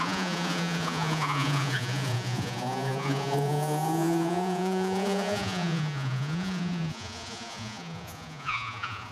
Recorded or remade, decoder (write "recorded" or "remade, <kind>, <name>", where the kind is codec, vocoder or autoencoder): remade, vocoder, Vocos